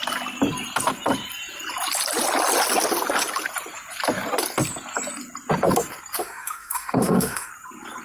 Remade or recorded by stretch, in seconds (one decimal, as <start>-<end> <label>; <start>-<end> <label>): 0.0-6.2 recorded; 6.2-7.5 remade; 7.5-8.0 recorded